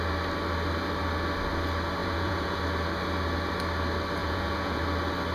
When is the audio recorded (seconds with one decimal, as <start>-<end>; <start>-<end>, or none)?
0.0-2.0; 2.6-4.2; 4.8-5.3